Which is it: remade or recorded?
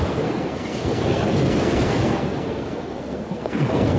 remade